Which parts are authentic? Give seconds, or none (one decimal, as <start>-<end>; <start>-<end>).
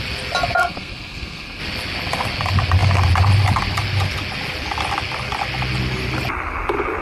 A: 0.0-0.6; 1.6-7.0